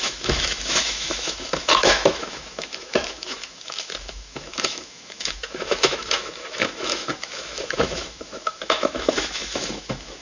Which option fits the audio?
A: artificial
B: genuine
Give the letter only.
A